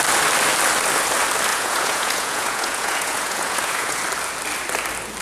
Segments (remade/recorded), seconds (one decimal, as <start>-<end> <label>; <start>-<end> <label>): 0.0-1.5 recorded; 1.5-4.0 remade; 4.0-5.2 recorded